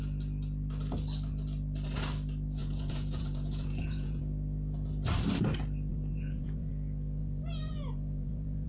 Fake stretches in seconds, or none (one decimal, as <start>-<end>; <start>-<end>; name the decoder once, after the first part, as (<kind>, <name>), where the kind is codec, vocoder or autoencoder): 2.6-4.2 (vocoder, Vocos); 5.9-6.7; 7.2-8.7